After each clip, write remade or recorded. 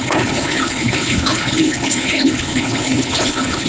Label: remade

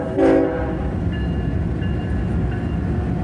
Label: recorded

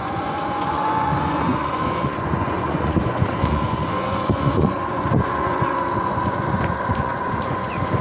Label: remade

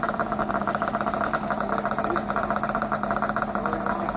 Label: recorded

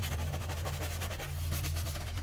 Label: recorded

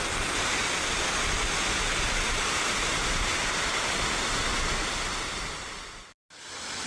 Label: recorded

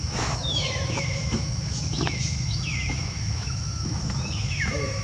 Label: remade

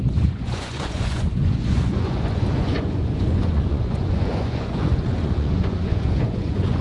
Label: remade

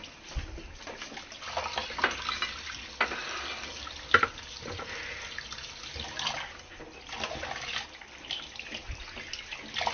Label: recorded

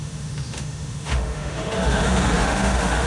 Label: remade